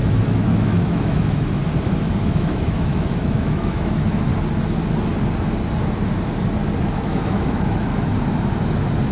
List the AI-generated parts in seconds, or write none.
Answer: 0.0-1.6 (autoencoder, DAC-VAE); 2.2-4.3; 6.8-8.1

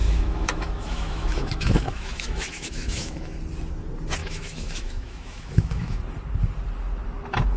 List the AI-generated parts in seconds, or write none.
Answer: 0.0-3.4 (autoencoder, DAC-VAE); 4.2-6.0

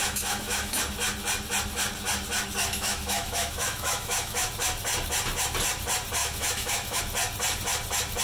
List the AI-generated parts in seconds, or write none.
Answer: 0.0-0.8 (autoencoder, DAC-VAE); 2.7-4.5; 6.2-7.0

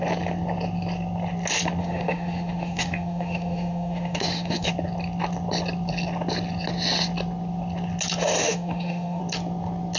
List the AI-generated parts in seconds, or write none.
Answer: 1.8-4.7 (autoencoder, DAC-VAE); 8.4-9.2

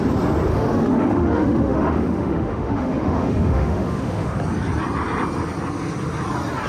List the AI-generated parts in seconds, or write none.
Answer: 0.5-4.4 (autoencoder, DAC-VAE)

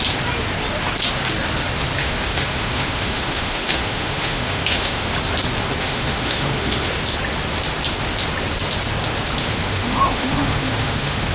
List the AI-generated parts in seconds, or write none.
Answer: 2.0-5.1 (autoencoder, DAC-VAE); 5.8-6.9; 9.4-11.3

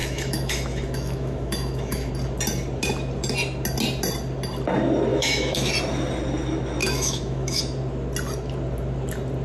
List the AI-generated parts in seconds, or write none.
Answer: 0.0-2.1 (autoencoder, DAC-VAE); 5.1-5.7; 6.8-7.6